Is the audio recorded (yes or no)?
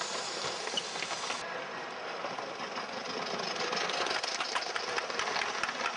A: yes